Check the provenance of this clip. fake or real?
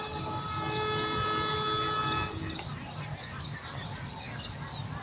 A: real